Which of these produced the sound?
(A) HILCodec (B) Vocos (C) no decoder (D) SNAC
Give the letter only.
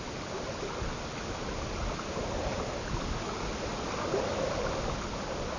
C